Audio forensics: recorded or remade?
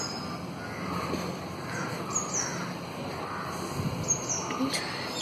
recorded